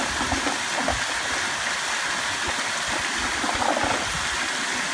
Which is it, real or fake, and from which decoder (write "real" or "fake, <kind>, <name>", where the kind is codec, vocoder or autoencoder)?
real